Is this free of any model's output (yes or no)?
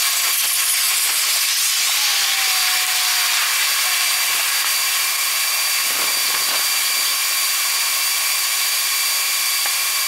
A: yes